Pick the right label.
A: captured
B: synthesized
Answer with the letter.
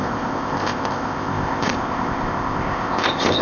B